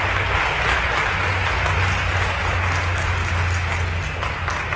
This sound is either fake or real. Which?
real